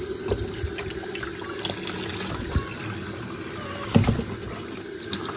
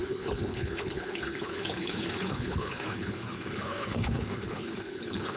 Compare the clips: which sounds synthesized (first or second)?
second